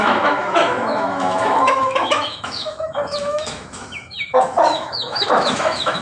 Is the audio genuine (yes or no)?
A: no